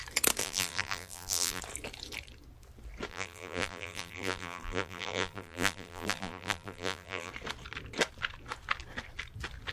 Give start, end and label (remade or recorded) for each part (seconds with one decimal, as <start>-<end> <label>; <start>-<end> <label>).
0.0-0.4 recorded; 0.4-1.6 remade; 1.6-3.1 recorded; 3.1-7.3 remade; 7.3-9.7 recorded